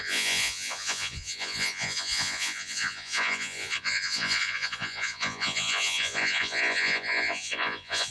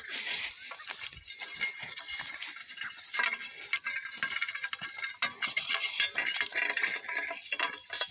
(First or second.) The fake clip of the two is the first